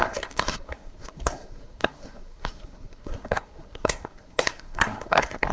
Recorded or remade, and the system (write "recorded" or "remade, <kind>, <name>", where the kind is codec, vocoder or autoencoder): remade, codec, SNAC